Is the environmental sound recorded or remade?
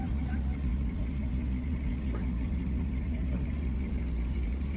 remade